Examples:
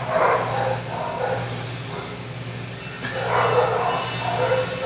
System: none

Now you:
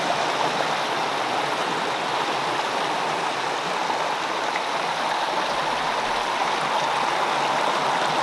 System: none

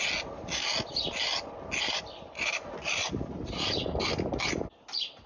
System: none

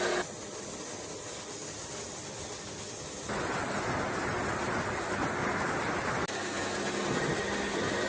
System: none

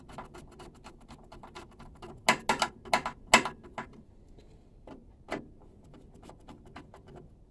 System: none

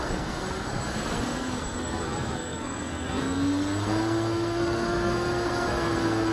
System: codec, SNAC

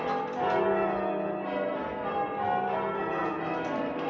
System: none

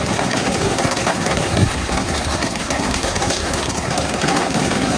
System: codec, SNAC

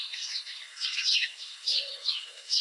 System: codec, SNAC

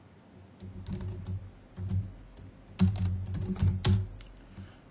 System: none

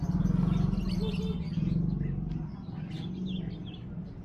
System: none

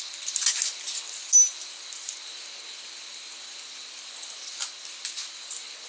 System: none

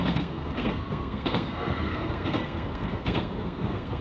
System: codec, SNAC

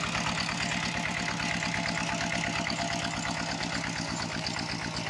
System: none